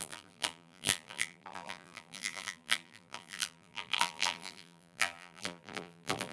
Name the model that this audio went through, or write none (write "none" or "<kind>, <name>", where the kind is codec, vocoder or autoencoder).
vocoder, BigVGAN v2